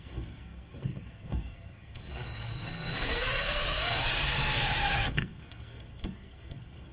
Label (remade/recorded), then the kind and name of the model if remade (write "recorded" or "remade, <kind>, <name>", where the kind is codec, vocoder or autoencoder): remade, codec, SNAC